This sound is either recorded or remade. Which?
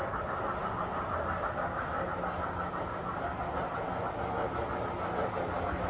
recorded